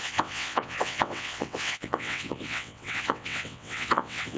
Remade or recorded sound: remade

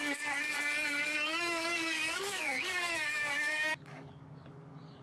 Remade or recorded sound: remade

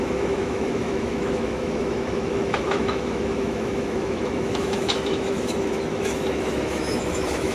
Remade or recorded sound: remade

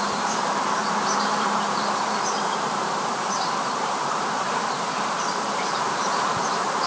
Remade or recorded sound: remade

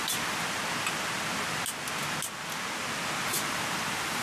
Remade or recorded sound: recorded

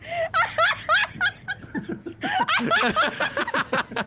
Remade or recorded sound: recorded